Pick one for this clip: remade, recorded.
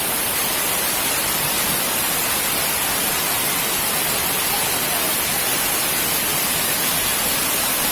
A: recorded